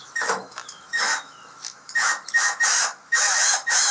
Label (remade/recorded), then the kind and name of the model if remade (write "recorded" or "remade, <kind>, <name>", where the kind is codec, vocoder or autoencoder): remade, autoencoder, DAC-VAE